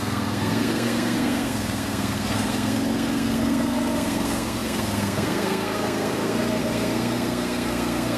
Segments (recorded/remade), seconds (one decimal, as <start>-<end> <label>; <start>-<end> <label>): 0.0-8.2 remade